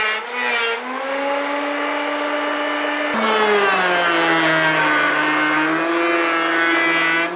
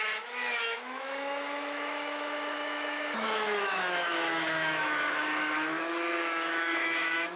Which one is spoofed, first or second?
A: second